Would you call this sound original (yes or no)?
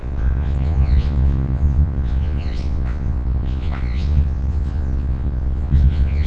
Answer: no